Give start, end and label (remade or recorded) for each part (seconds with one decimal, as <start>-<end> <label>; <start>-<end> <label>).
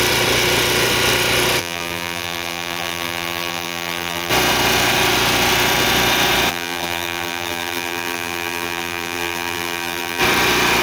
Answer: 0.0-1.6 recorded; 1.6-4.3 remade; 4.3-6.5 recorded; 6.5-10.2 remade; 10.2-10.8 recorded